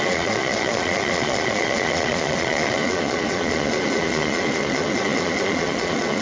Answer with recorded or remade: remade